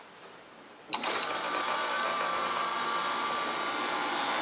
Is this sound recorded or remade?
remade